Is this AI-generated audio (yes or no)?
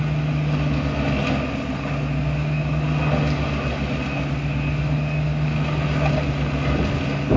no